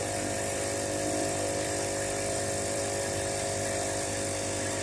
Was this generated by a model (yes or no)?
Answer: yes